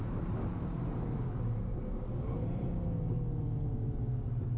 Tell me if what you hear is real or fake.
real